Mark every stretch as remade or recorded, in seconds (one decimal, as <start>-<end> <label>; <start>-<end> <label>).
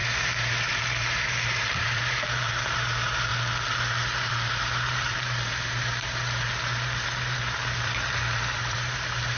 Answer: 0.0-3.3 remade; 3.3-4.3 recorded; 4.3-9.4 remade